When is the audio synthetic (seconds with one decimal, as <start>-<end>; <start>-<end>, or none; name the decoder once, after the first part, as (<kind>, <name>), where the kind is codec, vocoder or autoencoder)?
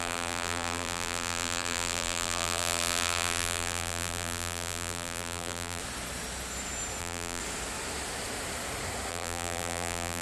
0.0-5.8 (vocoder, BigVGAN v2); 7.0-7.4; 9.1-10.2